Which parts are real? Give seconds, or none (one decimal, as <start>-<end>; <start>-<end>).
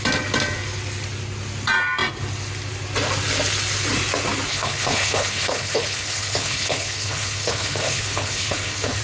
0.0-4.5